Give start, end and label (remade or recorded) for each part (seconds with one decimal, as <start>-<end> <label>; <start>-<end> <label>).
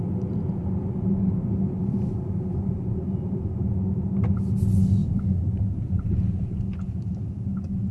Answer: 0.0-1.8 recorded; 1.8-2.7 remade; 2.7-5.0 recorded; 5.0-7.1 remade; 7.1-7.9 recorded